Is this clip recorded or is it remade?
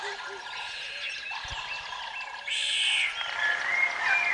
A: recorded